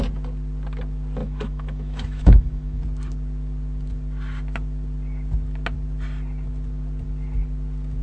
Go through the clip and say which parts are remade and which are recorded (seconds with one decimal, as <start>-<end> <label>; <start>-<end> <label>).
0.0-1.2 recorded; 1.2-2.8 remade; 2.8-8.0 recorded